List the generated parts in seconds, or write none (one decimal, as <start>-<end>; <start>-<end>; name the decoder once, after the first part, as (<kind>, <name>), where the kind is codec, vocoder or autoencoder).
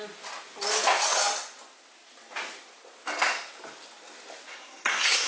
4.5-5.3 (codec, SNAC)